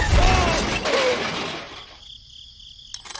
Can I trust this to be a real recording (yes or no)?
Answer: yes